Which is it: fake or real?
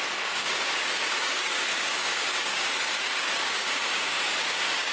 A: fake